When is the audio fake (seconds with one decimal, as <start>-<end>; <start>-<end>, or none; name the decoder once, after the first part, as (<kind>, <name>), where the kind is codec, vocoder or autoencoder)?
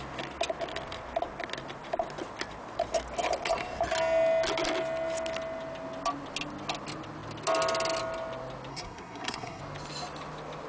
8.7-9.6 (codec, SNAC)